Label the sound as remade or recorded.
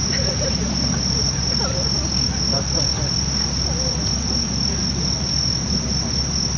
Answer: recorded